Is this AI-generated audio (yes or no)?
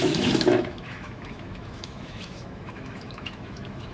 yes